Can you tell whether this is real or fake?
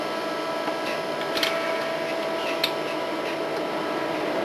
real